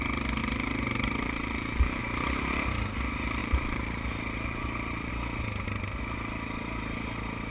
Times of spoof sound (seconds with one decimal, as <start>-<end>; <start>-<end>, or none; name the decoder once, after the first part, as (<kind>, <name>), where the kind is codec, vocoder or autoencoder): 0.4-2.0 (vocoder, BigVGAN v2); 3.4-5.1